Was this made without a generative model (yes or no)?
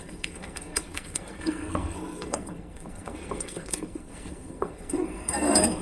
no